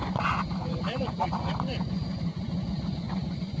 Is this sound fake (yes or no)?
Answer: yes